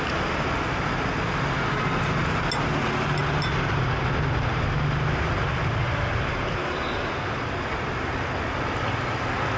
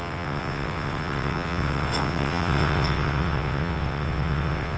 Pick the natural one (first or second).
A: first